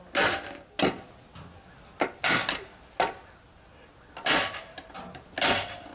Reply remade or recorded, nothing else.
recorded